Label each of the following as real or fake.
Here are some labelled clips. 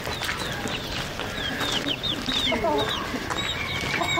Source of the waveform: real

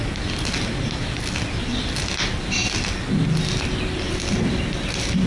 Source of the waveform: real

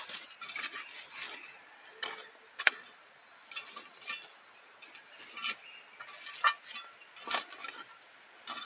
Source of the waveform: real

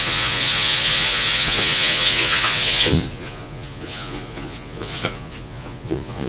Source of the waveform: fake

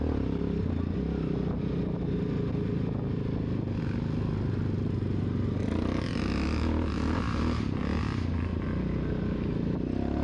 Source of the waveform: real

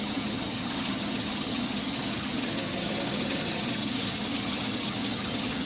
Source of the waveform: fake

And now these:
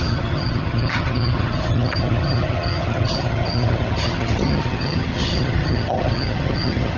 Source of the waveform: fake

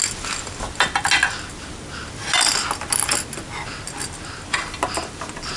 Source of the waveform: real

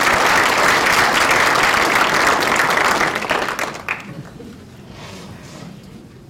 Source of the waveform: real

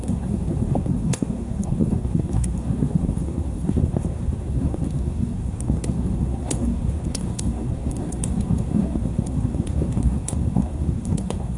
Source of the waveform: fake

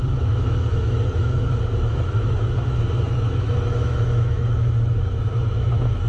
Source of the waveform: fake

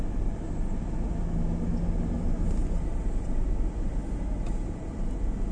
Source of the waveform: real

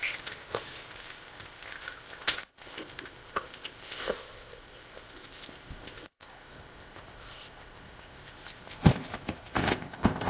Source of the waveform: fake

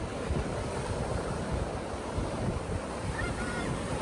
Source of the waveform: fake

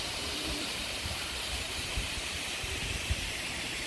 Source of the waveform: fake